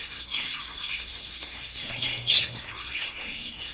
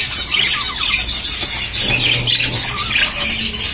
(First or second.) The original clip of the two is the second